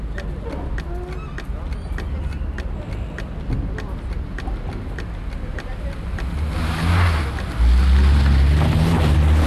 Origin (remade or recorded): recorded